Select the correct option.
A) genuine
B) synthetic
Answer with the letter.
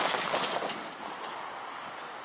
A